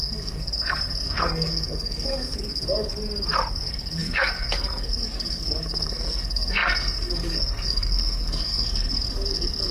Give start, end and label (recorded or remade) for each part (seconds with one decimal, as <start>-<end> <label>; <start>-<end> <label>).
0.0-2.9 remade; 2.9-3.5 recorded; 3.5-9.7 remade